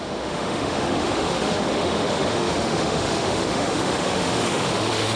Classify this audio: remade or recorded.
remade